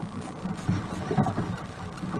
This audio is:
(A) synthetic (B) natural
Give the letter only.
A